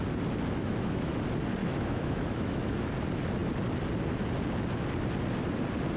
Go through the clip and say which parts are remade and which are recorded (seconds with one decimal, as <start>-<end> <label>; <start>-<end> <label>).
0.0-0.6 recorded; 0.6-1.1 remade; 1.1-1.6 recorded; 1.6-2.9 remade; 2.9-6.0 recorded